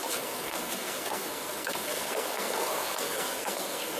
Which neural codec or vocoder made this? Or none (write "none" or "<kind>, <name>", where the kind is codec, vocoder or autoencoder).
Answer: codec, SNAC